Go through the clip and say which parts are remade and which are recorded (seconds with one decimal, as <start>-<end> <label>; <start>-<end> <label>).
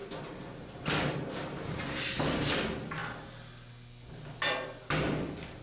0.0-5.6 recorded